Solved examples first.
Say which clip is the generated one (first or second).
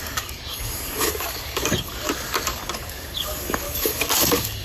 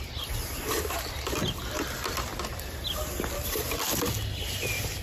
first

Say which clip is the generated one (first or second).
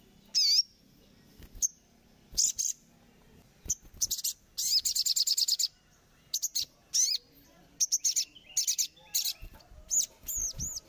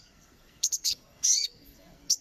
second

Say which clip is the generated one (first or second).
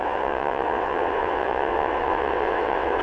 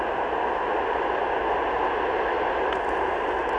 first